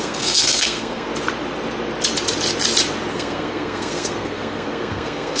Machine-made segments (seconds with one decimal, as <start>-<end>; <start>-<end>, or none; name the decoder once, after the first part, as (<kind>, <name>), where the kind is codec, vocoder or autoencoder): 0.0-1.1 (codec, SNAC); 3.1-5.4